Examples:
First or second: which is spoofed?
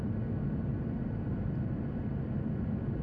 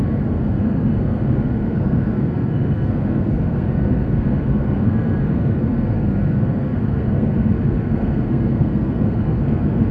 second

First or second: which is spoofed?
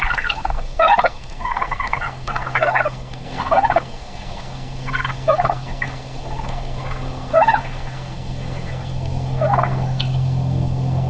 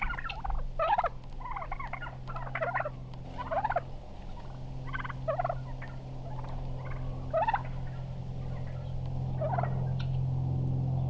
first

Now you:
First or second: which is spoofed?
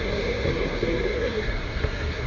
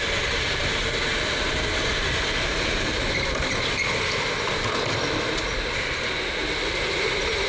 first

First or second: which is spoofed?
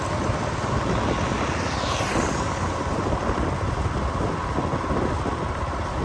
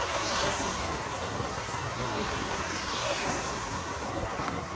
second